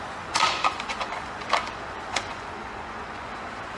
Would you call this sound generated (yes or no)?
yes